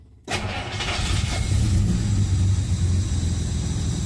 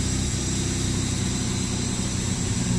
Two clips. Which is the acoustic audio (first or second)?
first